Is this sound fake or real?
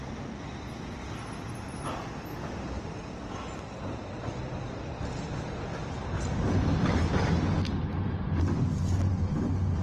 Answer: real